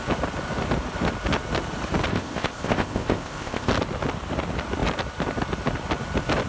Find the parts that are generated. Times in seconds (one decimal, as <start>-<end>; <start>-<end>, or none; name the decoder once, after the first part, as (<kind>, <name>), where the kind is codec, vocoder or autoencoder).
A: 2.1-3.7 (codec, ZipCodec)

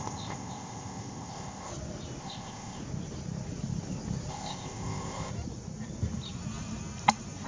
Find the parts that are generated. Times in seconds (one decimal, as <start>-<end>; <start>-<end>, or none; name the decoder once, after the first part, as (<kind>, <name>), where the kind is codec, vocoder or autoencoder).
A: 0.0-1.7 (codec, ZipCodec); 2.2-2.8; 4.3-5.3

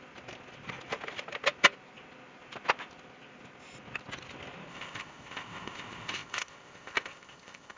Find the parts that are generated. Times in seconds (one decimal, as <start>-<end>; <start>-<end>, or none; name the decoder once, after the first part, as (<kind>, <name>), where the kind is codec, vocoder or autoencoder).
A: 4.7-7.8 (codec, ZipCodec)

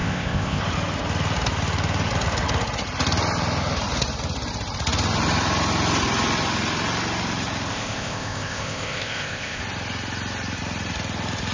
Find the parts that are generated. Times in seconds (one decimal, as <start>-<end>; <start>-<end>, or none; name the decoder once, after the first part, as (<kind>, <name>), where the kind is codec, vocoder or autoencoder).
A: 0.0-0.6 (codec, ZipCodec); 7.7-9.6

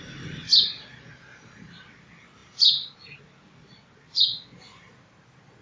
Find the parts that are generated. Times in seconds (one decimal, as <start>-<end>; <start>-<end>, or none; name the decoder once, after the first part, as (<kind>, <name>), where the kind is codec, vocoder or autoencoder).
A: none

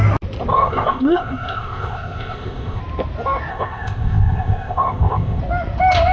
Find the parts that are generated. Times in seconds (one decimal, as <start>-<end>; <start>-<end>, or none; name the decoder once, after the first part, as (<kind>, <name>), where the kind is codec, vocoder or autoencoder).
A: 0.5-2.8 (codec, ZipCodec); 3.5-5.4